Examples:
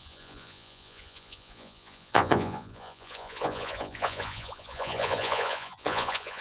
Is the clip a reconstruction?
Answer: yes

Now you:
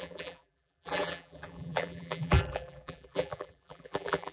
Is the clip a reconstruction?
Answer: yes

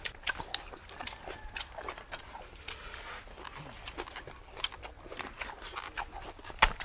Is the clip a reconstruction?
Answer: no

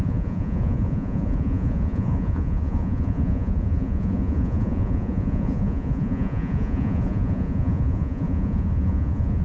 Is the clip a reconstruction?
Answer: yes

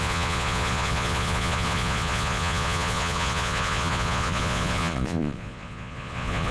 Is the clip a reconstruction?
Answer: yes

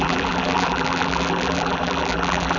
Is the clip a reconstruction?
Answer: yes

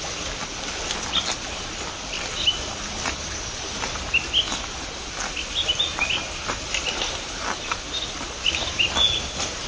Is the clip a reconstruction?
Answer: no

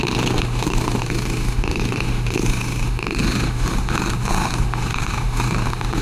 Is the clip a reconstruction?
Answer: yes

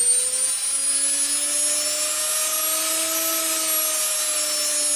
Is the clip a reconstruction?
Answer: no